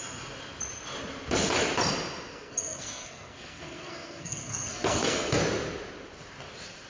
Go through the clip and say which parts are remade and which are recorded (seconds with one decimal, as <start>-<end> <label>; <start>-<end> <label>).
0.0-2.3 recorded; 2.3-5.4 remade; 5.4-6.9 recorded